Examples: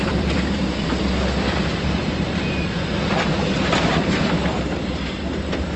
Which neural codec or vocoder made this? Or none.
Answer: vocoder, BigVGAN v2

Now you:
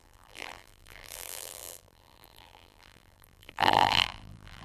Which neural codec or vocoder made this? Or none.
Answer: vocoder, BigVGAN v2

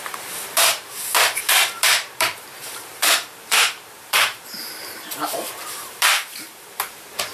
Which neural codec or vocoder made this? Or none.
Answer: vocoder, BigVGAN v2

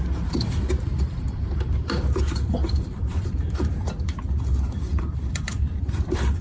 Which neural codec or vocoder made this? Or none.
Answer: vocoder, BigVGAN v2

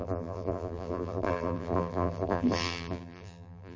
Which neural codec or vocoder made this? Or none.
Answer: vocoder, BigVGAN v2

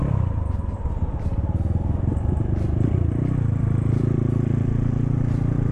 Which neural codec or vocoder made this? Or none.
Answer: vocoder, BigVGAN v2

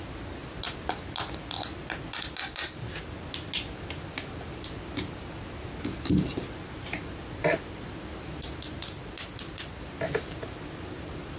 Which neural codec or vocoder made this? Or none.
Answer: none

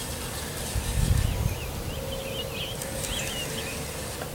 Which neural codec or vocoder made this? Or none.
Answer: none